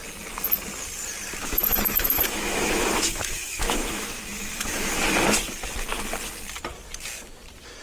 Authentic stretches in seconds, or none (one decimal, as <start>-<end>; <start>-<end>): 0.0-1.4; 4.9-7.8